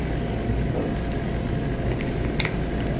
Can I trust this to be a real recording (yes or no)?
yes